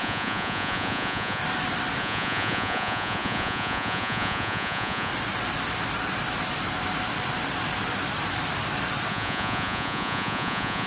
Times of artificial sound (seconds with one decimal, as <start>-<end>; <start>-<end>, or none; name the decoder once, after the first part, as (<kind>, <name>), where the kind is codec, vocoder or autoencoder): 0.0-1.4 (vocoder, Vocos); 2.0-5.1; 9.1-10.9